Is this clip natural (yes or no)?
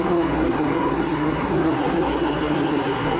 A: no